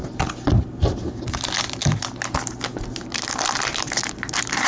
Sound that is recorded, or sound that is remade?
recorded